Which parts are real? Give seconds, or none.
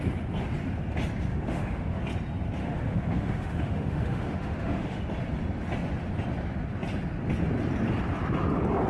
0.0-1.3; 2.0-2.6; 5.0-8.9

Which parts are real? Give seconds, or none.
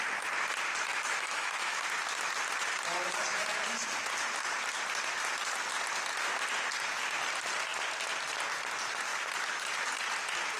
0.0-0.9; 1.8-10.6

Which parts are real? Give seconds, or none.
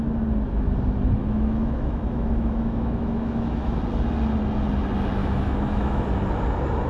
0.0-1.2; 3.8-5.2; 6.0-6.9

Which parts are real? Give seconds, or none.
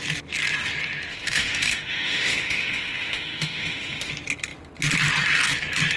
0.0-1.1; 4.1-6.0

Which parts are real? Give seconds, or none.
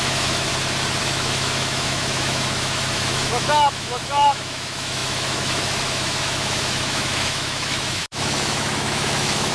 0.5-1.0